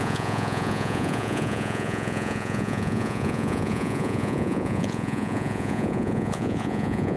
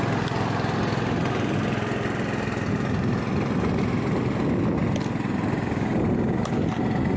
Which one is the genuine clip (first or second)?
second